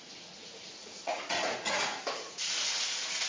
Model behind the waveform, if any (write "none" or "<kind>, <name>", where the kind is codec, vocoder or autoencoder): vocoder, Vocos